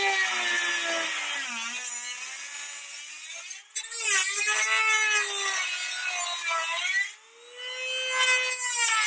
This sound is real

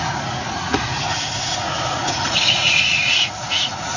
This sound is fake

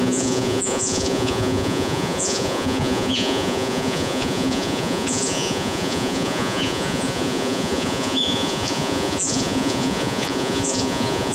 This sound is fake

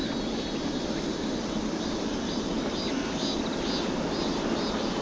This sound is real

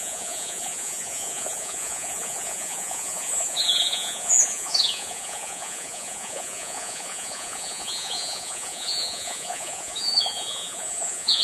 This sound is fake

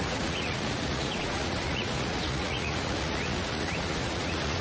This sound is fake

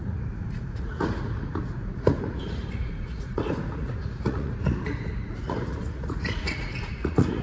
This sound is fake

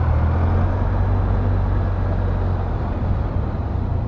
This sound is real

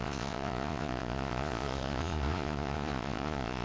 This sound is fake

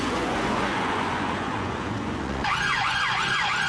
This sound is fake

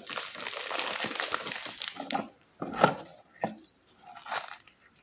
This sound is real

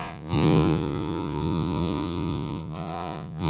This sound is fake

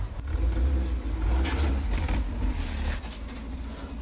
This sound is real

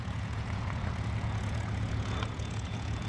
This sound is fake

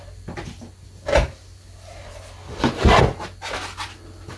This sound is real